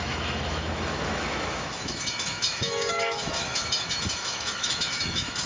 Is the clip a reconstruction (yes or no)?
yes